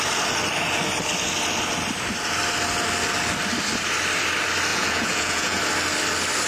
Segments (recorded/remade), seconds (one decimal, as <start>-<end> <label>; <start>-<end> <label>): 0.0-4.7 recorded; 4.7-5.6 remade; 5.6-6.5 recorded